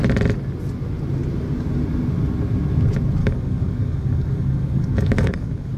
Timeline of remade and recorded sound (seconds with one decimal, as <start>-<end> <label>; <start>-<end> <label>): 0.0-3.2 recorded; 3.2-5.8 remade